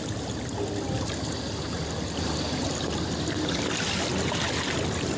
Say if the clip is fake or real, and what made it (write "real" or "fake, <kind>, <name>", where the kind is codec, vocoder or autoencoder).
real